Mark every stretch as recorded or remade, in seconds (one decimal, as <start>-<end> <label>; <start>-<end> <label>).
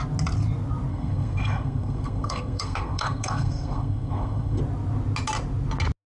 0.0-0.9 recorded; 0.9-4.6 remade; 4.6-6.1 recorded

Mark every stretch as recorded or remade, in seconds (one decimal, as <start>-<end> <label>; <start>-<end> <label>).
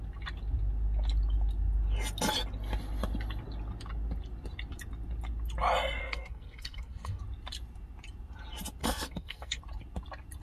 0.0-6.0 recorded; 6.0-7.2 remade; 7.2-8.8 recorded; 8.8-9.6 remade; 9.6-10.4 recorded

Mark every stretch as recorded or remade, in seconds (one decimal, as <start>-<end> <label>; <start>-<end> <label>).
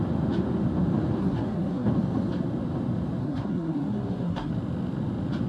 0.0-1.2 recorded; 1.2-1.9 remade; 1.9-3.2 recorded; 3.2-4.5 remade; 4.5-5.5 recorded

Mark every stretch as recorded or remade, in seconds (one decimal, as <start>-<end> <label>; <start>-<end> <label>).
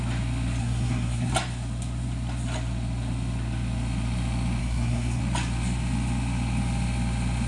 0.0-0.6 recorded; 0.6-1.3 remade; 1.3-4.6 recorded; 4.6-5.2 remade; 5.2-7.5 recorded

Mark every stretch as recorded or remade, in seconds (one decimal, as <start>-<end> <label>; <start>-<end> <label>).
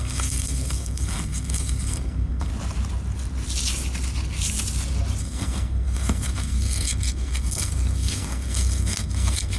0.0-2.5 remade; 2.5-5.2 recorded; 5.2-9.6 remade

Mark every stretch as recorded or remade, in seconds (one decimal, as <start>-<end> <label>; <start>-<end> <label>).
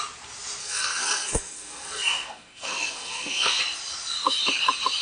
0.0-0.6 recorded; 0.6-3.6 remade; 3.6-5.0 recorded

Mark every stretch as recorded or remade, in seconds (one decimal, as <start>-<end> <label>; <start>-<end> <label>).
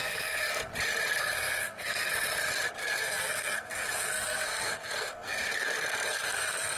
0.0-0.7 remade; 0.7-1.2 recorded; 1.2-2.1 remade; 2.1-2.8 recorded; 2.8-6.8 remade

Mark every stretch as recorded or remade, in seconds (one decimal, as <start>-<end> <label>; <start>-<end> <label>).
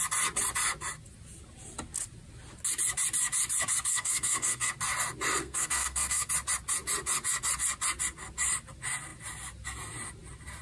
0.0-3.9 recorded; 3.9-4.7 remade; 4.7-5.4 recorded; 5.4-6.3 remade; 6.3-10.6 recorded